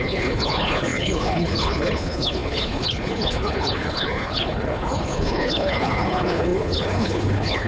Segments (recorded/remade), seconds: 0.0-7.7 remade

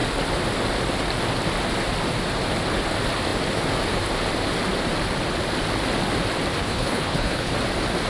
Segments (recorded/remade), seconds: 0.0-6.6 recorded; 6.6-7.5 remade; 7.5-8.1 recorded

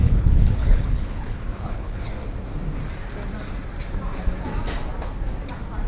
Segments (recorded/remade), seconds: 0.0-2.1 remade; 2.1-5.9 recorded

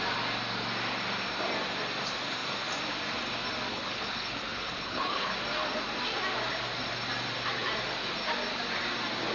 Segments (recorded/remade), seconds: 0.0-3.7 recorded; 3.7-5.3 remade; 5.3-9.3 recorded

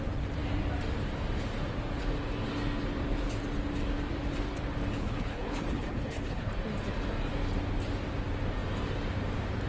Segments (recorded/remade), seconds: 0.0-5.0 recorded; 5.0-6.5 remade; 6.5-9.7 recorded

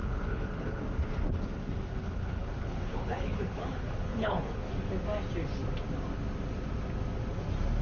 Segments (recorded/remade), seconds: 0.0-0.8 remade; 0.8-1.9 recorded; 1.9-4.7 remade; 4.7-7.8 recorded

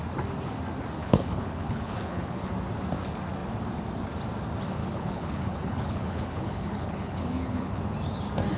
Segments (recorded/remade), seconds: 0.0-1.0 recorded; 1.0-2.5 remade; 2.5-4.8 recorded; 4.8-7.8 remade; 7.8-8.6 recorded

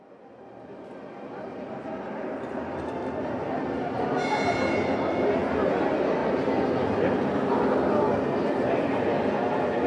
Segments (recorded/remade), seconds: 0.0-9.9 recorded